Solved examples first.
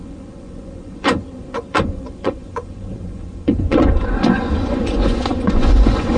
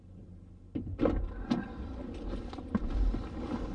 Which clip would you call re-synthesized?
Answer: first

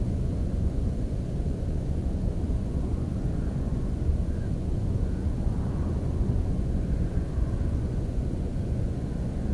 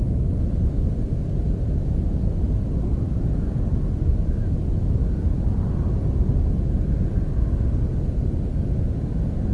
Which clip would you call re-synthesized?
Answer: first